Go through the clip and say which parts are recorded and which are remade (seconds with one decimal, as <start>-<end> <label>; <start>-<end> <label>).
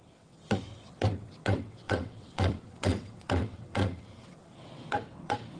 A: 0.0-5.6 remade